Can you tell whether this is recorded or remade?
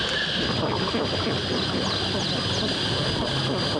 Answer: recorded